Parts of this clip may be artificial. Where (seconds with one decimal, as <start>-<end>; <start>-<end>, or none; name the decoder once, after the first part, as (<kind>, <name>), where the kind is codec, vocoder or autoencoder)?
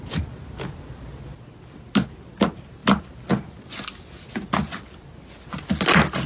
none